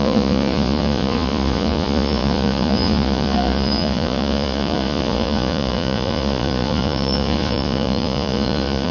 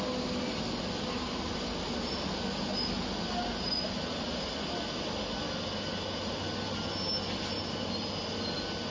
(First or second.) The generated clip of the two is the first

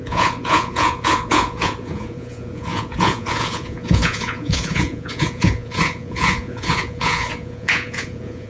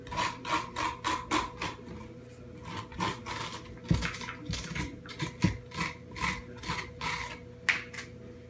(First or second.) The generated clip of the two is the first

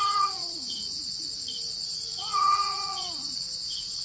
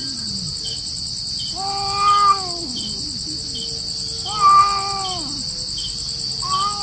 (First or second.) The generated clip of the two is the first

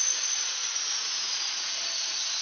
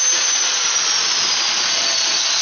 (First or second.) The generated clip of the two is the first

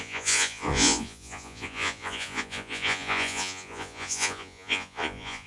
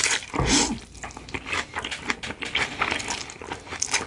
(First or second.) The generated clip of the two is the first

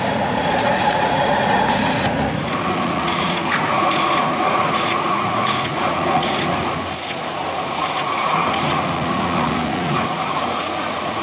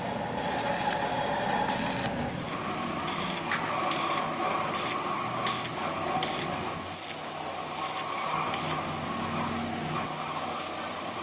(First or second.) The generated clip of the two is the first